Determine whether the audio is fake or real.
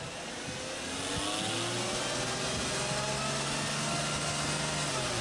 real